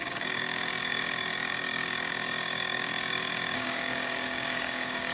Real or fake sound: fake